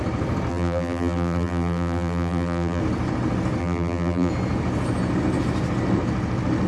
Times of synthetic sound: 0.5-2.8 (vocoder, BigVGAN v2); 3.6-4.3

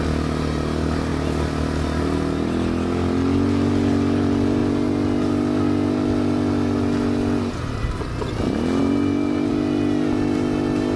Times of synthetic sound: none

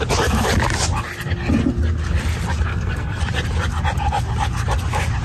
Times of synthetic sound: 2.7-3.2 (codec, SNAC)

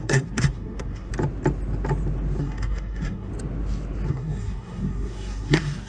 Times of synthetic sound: 0.0-1.1 (codec, SNAC); 2.4-3.3; 4.1-5.9

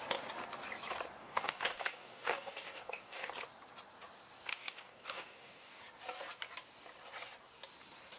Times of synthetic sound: 1.2-3.3 (codec, DAC); 4.5-5.8

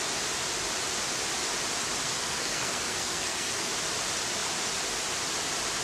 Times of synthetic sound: 2.0-3.7 (codec, SNAC)

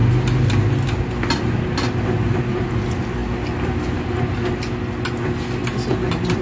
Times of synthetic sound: none